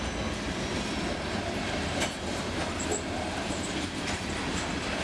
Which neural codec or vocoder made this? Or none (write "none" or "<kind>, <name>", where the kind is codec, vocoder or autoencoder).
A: none